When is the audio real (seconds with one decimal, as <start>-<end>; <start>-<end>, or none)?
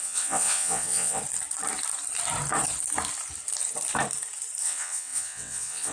1.2-4.6